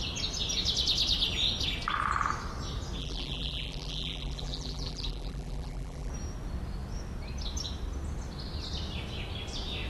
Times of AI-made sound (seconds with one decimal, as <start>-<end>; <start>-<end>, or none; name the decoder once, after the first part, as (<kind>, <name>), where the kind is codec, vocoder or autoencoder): 3.0-6.1 (vocoder, BigVGAN v2)